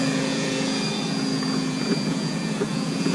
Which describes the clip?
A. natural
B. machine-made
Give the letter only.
B